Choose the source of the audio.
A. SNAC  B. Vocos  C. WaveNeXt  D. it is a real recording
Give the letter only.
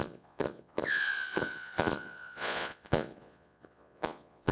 B